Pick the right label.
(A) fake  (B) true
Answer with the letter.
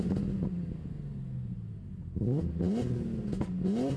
B